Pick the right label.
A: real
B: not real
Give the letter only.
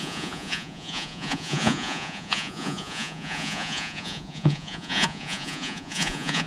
B